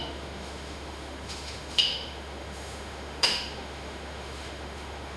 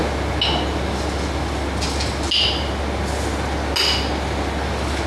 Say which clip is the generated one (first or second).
first